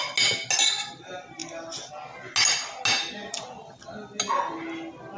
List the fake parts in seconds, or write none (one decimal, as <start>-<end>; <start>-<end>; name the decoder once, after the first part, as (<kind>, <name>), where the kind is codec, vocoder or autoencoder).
none